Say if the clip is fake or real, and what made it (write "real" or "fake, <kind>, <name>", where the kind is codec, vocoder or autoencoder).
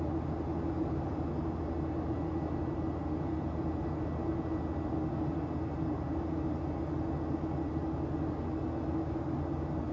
real